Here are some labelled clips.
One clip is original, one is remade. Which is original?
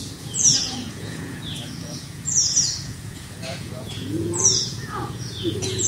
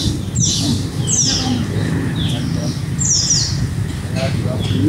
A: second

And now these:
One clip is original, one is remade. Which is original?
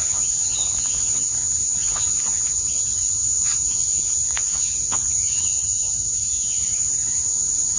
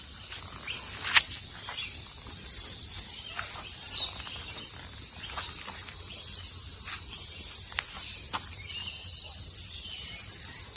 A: second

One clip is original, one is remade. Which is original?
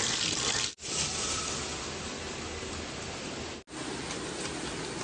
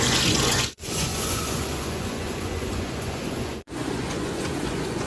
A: first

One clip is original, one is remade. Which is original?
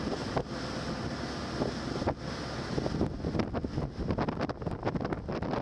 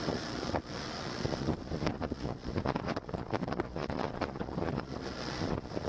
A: first